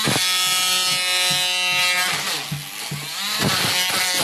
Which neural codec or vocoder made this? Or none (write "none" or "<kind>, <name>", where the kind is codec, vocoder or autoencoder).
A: none